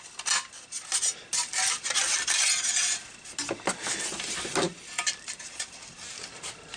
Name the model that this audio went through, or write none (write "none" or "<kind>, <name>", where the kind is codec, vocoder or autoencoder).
none